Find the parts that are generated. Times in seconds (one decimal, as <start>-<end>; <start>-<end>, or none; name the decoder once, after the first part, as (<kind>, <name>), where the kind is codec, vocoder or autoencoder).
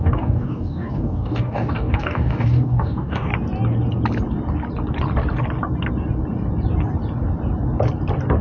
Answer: 0.0-3.3 (codec, DAC)